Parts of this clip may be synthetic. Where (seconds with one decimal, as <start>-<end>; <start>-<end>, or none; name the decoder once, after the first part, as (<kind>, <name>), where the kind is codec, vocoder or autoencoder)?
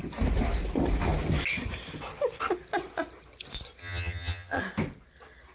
3.8-4.6 (vocoder, HiFi-GAN)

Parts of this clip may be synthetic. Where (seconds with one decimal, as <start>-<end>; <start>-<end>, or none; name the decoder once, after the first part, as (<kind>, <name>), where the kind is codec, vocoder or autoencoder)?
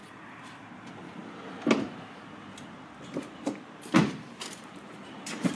0.0-1.2 (vocoder, BigVGAN v2); 3.2-5.5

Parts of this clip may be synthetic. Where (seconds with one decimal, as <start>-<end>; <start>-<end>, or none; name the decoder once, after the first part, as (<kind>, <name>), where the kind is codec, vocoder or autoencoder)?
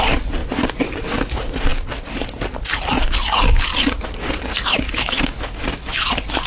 4.5-6.1 (autoencoder, DAC-VAE)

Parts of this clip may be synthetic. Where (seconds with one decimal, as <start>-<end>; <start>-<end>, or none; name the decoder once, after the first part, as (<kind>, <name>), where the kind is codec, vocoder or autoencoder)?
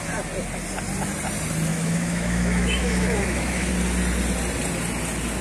1.7-3.7 (autoencoder, DAC-VAE)